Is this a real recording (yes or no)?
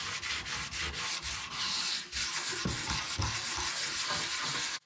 yes